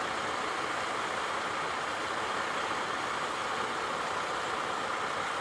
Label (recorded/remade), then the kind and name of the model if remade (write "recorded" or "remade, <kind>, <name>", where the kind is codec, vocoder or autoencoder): recorded